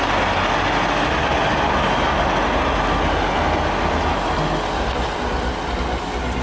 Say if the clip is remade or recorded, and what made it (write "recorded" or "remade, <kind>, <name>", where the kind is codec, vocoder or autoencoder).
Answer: recorded